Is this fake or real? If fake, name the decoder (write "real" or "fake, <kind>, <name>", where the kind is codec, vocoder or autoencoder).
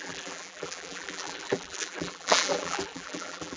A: fake, vocoder, BigVGAN v2